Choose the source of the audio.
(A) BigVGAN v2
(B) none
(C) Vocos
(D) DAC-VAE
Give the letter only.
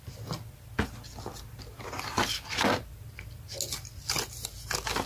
B